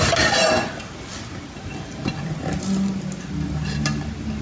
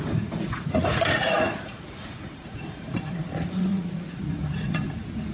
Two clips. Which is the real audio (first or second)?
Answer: first